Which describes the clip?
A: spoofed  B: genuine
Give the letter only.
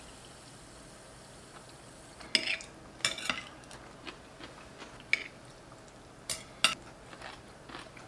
B